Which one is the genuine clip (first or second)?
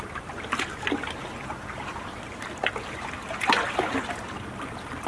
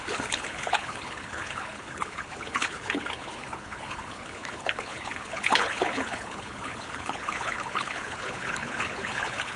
first